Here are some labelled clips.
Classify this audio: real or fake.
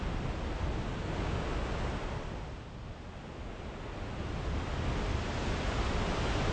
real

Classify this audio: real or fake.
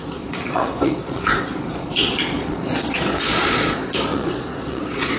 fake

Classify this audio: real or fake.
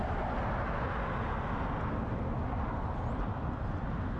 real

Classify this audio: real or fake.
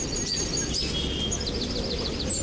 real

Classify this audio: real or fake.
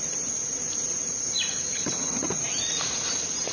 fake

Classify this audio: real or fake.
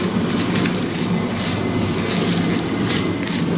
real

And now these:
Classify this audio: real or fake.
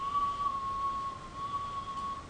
real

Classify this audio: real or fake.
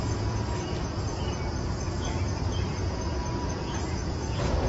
fake